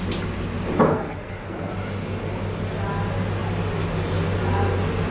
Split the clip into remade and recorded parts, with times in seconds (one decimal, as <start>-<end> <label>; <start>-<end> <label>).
0.0-0.9 recorded; 0.9-1.7 remade; 1.7-5.1 recorded